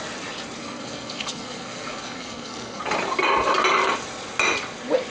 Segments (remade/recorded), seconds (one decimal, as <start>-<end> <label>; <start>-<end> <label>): 0.0-0.6 recorded; 0.6-2.8 remade; 2.8-5.1 recorded

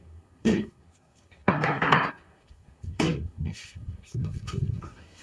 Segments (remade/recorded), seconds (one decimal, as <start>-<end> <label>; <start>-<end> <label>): 0.0-5.2 remade

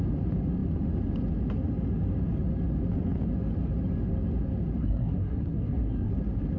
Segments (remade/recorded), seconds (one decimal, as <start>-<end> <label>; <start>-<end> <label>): 0.0-4.8 recorded; 4.8-6.1 remade; 6.1-6.6 recorded

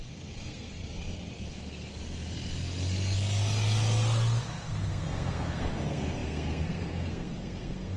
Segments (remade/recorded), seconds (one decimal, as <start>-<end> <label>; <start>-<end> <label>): 0.0-0.8 remade; 0.8-1.5 recorded; 1.5-1.9 remade; 1.9-4.4 recorded; 4.4-8.0 remade

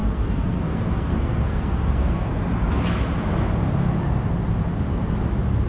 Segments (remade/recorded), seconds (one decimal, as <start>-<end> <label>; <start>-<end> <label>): 0.0-2.3 remade; 2.3-5.7 recorded

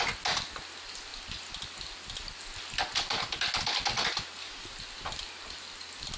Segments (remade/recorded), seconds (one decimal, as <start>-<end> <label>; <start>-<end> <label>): 0.0-6.2 recorded

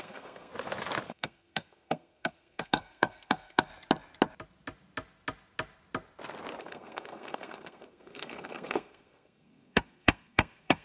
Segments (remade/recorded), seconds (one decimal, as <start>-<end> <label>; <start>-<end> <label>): 0.0-0.5 remade; 0.5-1.1 recorded; 1.1-3.7 remade; 3.7-6.6 recorded; 6.6-10.8 remade

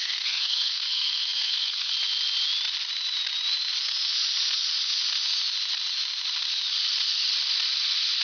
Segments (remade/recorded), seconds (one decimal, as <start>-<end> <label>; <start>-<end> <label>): 0.0-1.9 remade; 1.9-8.2 recorded